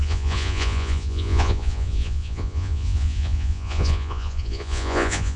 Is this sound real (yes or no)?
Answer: no